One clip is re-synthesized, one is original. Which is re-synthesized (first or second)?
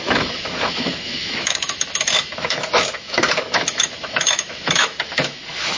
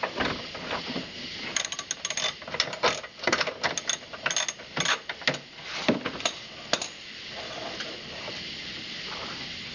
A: first